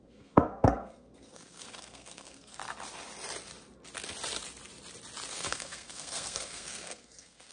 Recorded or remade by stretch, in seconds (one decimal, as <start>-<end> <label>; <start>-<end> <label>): 0.0-2.6 remade; 2.6-5.3 recorded; 5.3-7.5 remade